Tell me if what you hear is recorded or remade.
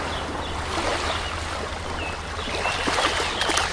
recorded